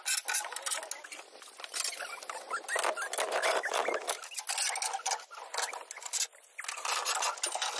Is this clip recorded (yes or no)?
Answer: yes